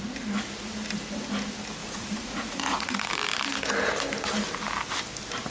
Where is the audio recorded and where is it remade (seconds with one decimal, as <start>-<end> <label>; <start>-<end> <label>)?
0.0-1.8 recorded; 1.8-3.0 remade; 3.0-5.5 recorded